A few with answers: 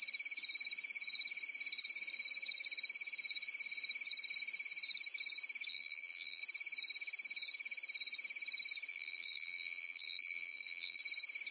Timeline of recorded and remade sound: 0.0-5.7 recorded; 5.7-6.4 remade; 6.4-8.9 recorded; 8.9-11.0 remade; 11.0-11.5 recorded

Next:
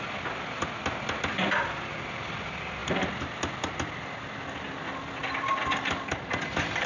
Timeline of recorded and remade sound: 0.0-6.9 recorded